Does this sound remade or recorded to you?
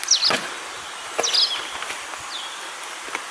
recorded